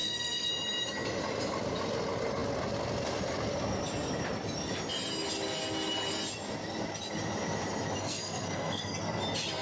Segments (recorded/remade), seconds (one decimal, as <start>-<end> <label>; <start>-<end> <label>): 0.0-0.5 remade; 0.5-8.0 recorded; 8.0-9.2 remade; 9.2-9.6 recorded